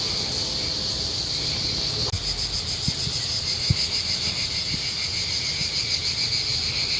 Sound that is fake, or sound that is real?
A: real